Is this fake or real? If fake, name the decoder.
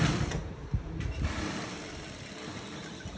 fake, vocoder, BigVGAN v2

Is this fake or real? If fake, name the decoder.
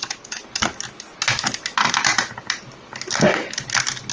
real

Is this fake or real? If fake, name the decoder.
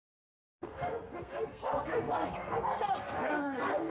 fake, codec, SNAC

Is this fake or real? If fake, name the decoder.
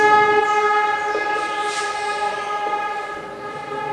real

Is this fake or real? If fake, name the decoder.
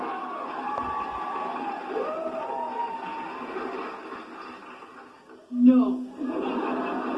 real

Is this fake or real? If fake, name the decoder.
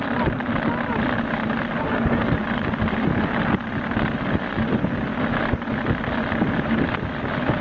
real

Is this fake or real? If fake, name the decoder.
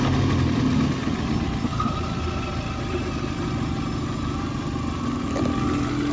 real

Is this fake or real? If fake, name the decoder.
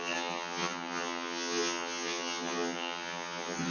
fake, vocoder, HiFi-GAN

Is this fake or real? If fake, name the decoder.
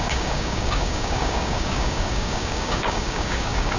fake, codec, DAC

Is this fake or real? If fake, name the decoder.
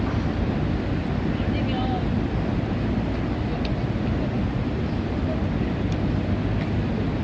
real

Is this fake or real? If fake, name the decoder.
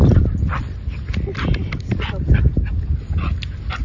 real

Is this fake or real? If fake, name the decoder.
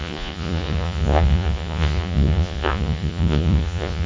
fake, vocoder, Vocos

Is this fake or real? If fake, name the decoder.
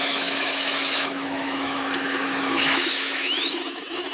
fake, autoencoder, DAC-VAE